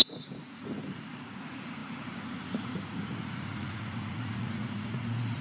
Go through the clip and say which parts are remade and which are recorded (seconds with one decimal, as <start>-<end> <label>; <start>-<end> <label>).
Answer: 0.0-5.4 remade